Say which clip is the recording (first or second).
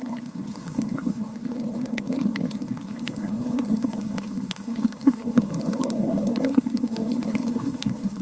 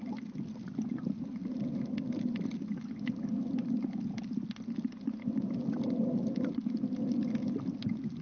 second